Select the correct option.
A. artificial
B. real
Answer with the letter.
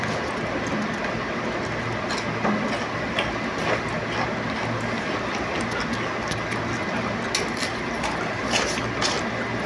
B